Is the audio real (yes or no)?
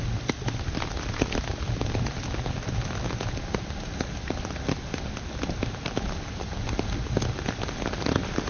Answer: yes